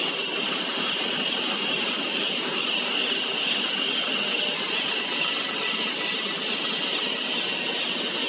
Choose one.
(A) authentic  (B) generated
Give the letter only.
A